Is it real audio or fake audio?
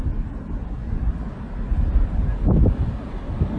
real